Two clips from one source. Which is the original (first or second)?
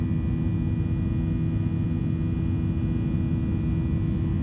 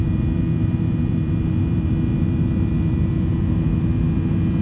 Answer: first